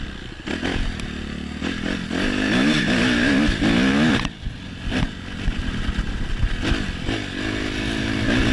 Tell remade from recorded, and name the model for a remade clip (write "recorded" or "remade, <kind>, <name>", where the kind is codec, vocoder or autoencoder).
recorded